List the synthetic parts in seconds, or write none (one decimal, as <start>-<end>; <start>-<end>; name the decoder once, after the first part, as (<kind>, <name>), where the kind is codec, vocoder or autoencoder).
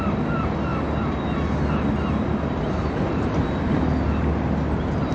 none